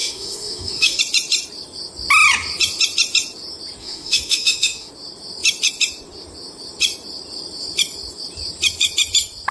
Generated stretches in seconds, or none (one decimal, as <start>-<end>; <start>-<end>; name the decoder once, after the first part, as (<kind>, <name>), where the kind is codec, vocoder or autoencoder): 0.0-1.0 (autoencoder, DAC-VAE); 3.8-4.9